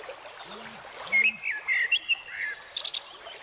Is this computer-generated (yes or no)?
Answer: no